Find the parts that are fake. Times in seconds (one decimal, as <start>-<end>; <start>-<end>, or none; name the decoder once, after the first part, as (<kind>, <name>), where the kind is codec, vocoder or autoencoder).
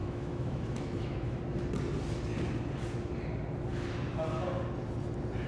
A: 0.0-1.4 (autoencoder, DAC-VAE)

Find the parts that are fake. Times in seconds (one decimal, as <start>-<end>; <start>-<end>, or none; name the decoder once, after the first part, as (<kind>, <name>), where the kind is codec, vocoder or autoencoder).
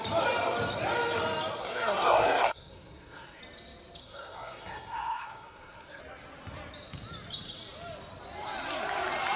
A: 1.6-3.4 (codec, SNAC); 4.0-6.0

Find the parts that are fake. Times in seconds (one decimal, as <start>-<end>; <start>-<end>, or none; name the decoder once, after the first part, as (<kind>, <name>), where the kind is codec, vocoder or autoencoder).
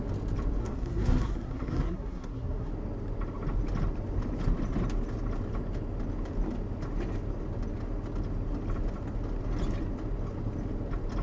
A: 0.6-2.7 (codec, SNAC)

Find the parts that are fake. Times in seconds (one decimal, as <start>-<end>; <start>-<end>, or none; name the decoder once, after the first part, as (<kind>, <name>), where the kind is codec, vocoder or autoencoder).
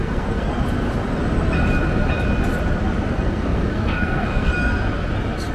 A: 0.0-0.5 (codec, SNAC); 3.1-4.5